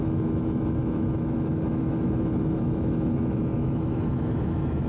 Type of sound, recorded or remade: remade